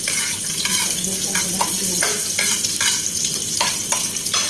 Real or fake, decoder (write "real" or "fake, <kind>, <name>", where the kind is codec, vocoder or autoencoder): real